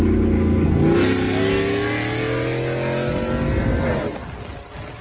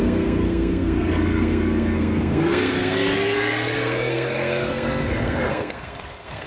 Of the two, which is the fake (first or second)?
second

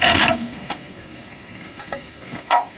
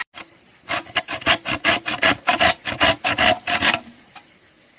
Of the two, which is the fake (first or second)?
first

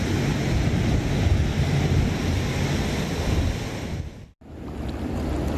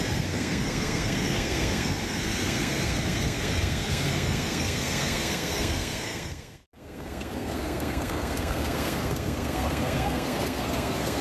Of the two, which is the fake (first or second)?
second